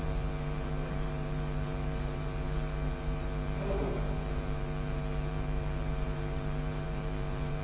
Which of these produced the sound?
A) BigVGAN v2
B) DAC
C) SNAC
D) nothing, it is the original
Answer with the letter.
A